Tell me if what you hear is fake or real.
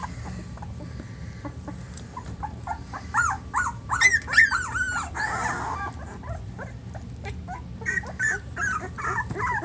real